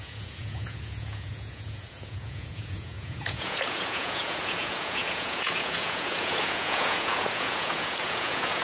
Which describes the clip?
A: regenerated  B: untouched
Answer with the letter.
A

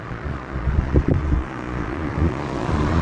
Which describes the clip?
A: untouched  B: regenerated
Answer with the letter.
B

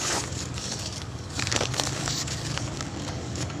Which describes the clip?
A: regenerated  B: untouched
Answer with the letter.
A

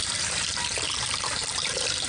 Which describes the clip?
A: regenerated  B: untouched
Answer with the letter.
A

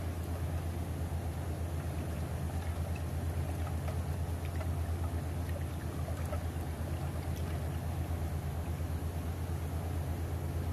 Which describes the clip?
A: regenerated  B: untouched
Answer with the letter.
B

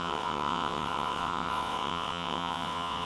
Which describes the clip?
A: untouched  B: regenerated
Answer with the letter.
B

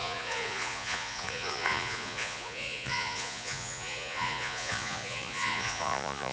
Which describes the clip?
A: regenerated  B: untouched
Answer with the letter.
A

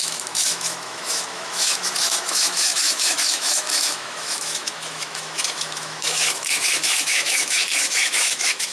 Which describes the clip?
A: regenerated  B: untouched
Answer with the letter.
A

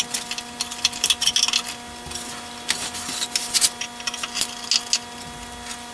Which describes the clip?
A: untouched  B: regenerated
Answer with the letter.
A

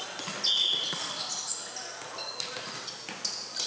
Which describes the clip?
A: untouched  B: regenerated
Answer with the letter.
A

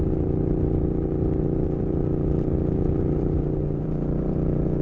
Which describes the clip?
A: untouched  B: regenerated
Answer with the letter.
B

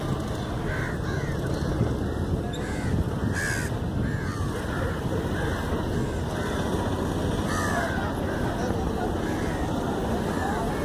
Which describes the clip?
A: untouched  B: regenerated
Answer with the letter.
A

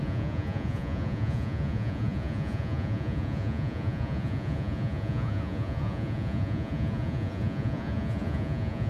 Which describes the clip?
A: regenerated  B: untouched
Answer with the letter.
A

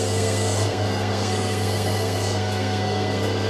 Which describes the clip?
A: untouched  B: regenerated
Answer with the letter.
B